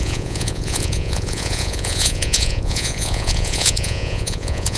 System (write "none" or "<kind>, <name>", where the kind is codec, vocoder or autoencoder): vocoder, Vocos